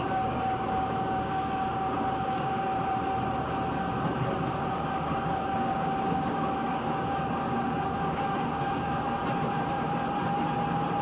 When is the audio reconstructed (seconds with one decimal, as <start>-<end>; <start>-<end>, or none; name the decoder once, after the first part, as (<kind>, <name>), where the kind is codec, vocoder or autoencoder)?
0.0-2.7 (codec, DAC); 4.7-9.2